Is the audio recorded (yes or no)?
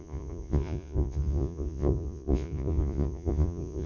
no